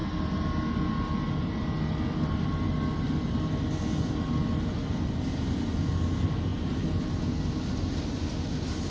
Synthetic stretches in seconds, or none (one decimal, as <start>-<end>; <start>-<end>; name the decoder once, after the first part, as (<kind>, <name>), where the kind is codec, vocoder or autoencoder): 6.5-7.2 (vocoder, BigVGAN v2)